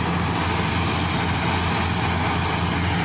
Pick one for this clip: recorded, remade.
recorded